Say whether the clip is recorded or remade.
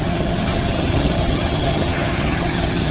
remade